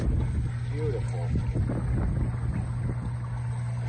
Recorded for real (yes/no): yes